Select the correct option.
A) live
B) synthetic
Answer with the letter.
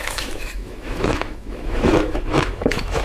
B